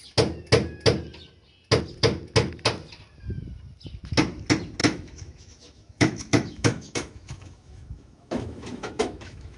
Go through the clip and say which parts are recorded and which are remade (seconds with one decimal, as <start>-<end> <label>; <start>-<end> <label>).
0.0-4.8 recorded; 4.8-9.6 remade

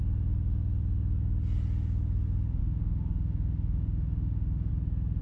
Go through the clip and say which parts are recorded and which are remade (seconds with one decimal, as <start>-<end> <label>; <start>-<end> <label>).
0.0-2.6 recorded; 2.6-4.7 remade; 4.7-5.2 recorded

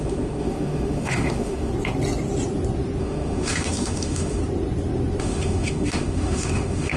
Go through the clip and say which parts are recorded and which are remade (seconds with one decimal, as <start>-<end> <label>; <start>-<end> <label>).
0.0-1.7 remade; 1.7-3.0 recorded; 3.0-4.4 remade; 4.4-5.2 recorded; 5.2-7.0 remade

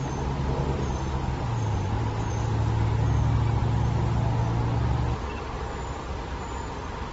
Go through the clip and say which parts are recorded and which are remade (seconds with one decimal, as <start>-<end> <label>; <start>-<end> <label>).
0.0-7.1 recorded

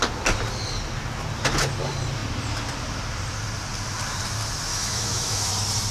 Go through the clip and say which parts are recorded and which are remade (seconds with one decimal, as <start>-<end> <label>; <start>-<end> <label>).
0.0-4.7 recorded; 4.7-5.5 remade; 5.5-5.9 recorded

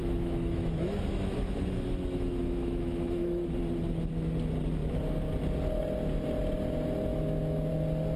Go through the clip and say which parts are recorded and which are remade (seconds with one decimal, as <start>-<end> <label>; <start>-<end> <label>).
0.0-3.5 remade; 3.5-7.1 recorded; 7.1-7.7 remade; 7.7-8.2 recorded

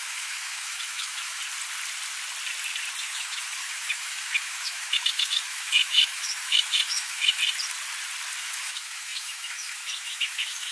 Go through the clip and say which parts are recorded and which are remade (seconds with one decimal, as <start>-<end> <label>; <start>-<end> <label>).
0.0-1.4 remade; 1.4-3.0 recorded; 3.0-7.4 remade; 7.4-8.4 recorded; 8.4-10.7 remade

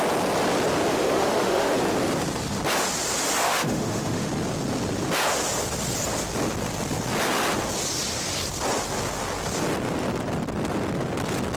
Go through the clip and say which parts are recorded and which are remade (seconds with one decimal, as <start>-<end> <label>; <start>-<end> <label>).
0.0-0.9 recorded; 0.9-1.7 remade; 1.7-3.4 recorded; 3.4-4.3 remade; 4.3-11.6 recorded